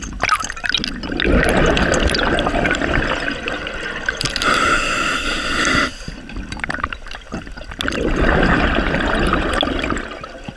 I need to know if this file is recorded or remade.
recorded